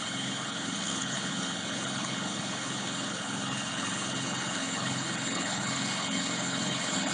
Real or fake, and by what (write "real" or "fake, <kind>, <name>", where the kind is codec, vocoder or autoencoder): fake, codec, HILCodec